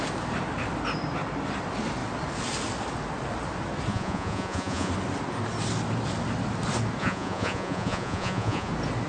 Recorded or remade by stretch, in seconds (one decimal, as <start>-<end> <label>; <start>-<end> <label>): 0.0-3.9 recorded; 3.9-4.9 remade; 4.9-7.0 recorded; 7.0-8.7 remade; 8.7-9.1 recorded